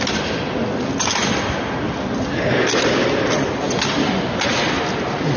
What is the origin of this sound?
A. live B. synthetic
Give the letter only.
A